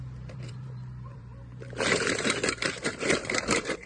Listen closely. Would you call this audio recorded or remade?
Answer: remade